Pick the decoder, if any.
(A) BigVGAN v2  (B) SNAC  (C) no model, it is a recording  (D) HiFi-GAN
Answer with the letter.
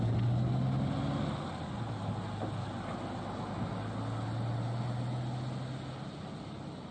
C